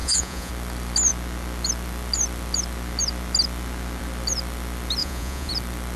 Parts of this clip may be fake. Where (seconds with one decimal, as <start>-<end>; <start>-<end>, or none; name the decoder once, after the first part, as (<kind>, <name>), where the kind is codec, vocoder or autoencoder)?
0.0-0.5 (vocoder, Vocos); 5.0-5.5